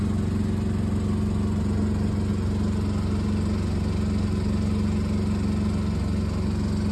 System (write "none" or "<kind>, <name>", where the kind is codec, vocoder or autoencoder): none